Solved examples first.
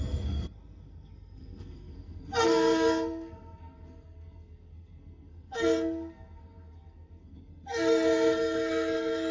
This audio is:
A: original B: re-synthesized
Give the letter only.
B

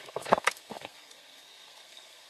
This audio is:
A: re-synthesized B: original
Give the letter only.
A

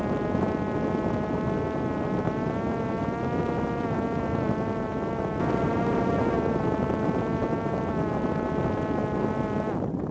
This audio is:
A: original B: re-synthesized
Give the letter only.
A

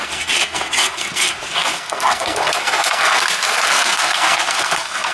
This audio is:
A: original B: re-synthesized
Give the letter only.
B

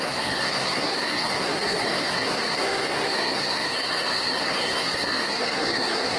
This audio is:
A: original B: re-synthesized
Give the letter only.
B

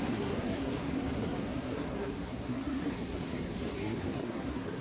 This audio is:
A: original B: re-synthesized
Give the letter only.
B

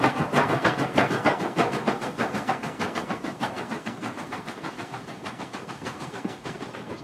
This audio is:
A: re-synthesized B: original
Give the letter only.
A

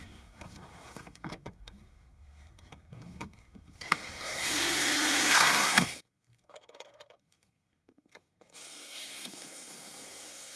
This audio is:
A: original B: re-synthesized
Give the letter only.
B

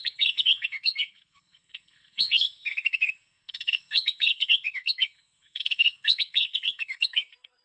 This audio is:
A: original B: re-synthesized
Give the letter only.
B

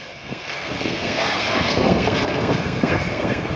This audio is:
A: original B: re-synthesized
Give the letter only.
B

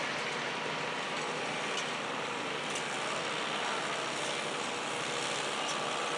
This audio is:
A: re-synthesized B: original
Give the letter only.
B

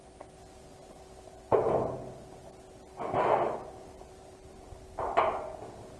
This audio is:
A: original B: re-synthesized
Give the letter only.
A